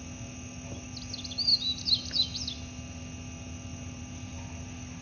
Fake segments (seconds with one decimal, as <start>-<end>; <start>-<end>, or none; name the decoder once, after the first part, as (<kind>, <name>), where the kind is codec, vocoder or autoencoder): none